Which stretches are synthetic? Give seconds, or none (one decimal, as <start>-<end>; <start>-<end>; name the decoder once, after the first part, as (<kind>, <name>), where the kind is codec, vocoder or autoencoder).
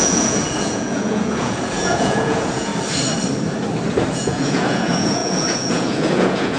0.0-2.7 (vocoder, Vocos); 4.1-6.6